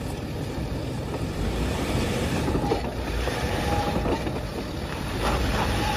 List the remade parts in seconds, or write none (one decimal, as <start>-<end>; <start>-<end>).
0.8-3.6

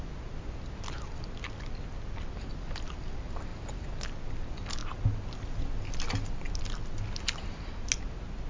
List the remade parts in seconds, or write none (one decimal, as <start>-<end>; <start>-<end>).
none